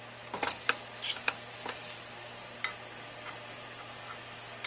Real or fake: real